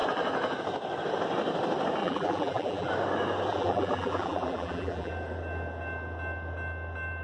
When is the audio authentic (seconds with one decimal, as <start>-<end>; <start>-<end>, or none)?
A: 0.0-2.0; 2.9-3.5; 5.1-7.2